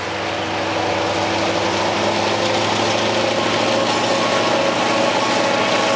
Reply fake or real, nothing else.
real